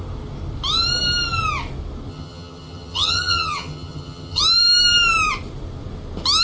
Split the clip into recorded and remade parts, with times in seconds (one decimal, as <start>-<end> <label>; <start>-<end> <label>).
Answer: 0.0-2.1 recorded; 2.1-4.4 remade; 4.4-6.4 recorded